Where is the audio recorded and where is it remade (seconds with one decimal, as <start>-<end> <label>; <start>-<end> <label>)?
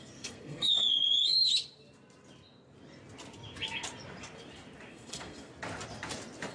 0.0-1.5 remade; 1.5-4.9 recorded; 4.9-5.5 remade; 5.5-6.5 recorded